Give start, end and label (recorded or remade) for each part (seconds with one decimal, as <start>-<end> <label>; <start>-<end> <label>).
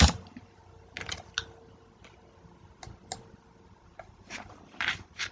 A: 0.0-0.6 remade; 0.6-3.8 recorded; 3.8-5.3 remade